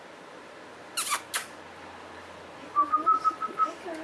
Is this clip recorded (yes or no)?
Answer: yes